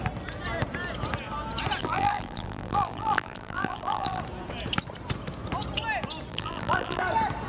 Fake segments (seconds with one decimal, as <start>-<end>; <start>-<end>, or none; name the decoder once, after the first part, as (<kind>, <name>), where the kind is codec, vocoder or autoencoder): 1.8-4.2 (vocoder, BigVGAN v2); 6.3-7.0